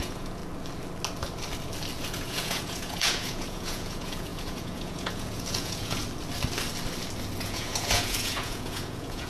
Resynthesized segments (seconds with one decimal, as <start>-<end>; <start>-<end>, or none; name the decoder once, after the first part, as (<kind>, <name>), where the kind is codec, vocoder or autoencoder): 0.0-0.4 (vocoder, Vocos); 2.1-6.0; 7.4-9.3